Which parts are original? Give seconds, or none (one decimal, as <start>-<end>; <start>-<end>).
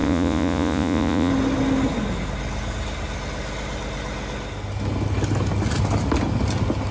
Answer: 1.3-6.9